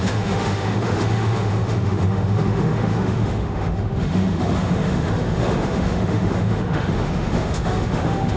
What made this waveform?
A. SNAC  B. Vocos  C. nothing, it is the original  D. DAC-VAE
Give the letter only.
D